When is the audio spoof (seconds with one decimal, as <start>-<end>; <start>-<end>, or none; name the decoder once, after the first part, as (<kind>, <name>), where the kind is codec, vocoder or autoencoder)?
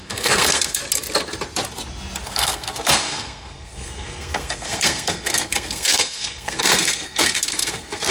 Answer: 0.0-0.8 (codec, SNAC); 2.2-8.1